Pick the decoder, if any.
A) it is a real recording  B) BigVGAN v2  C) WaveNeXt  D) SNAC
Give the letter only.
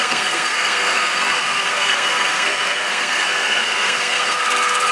D